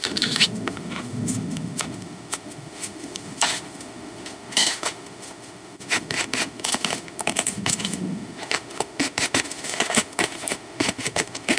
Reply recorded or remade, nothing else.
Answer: remade